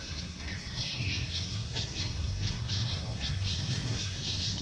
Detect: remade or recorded remade